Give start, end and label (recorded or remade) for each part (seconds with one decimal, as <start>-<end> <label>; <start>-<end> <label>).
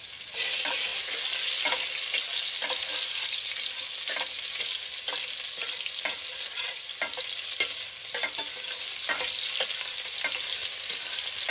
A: 0.0-11.5 recorded